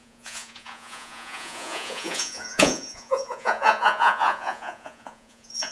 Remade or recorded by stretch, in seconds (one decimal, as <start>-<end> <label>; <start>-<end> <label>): 0.0-5.7 remade